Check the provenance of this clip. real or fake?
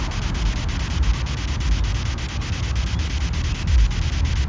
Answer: real